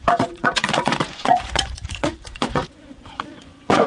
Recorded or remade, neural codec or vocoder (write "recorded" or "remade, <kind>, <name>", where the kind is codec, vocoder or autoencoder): remade, vocoder, Vocos